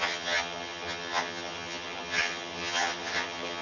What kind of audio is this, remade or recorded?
remade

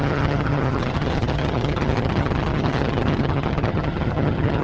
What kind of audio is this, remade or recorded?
remade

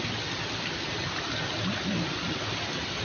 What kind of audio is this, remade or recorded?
recorded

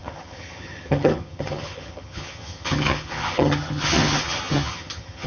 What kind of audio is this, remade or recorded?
remade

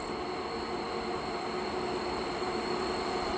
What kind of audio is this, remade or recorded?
recorded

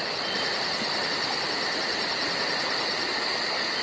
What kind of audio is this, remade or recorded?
recorded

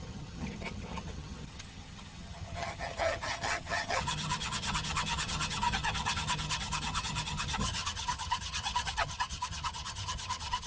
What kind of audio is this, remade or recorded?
remade